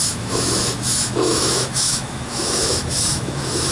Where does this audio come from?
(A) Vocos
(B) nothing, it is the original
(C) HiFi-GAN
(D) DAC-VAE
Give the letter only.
D